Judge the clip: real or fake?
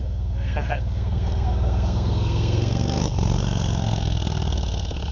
fake